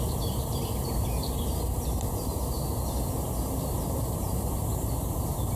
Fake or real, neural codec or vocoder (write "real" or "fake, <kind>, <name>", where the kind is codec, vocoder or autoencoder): fake, vocoder, BigVGAN v2